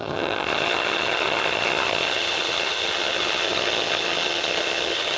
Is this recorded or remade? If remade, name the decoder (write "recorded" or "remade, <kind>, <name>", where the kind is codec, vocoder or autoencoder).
remade, vocoder, HiFi-GAN